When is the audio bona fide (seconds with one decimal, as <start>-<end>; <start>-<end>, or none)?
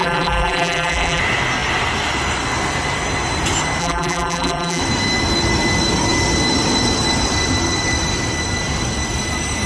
1.2-3.8; 4.8-9.7